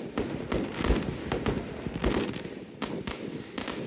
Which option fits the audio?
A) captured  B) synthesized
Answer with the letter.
A